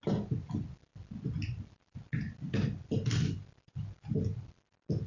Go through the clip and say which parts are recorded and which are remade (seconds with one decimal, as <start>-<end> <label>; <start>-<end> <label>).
0.0-5.1 recorded